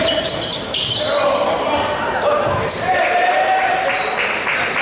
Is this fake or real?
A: real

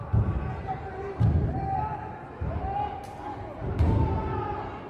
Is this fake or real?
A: real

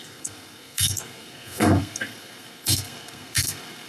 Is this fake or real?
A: fake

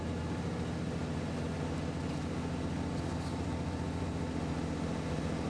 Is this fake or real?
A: real